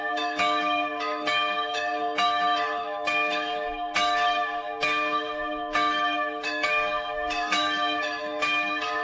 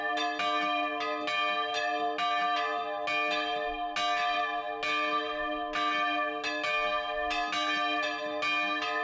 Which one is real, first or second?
second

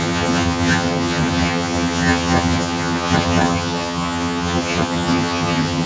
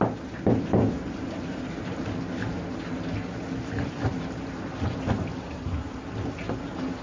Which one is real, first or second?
second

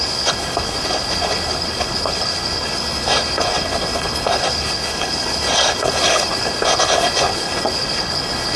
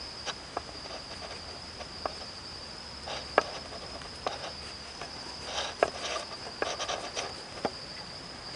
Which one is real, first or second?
second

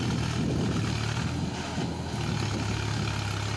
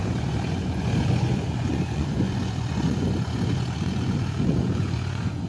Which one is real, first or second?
first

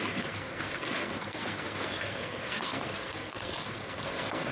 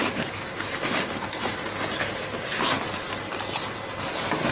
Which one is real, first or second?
second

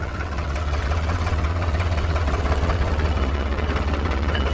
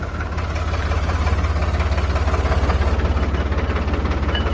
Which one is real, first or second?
second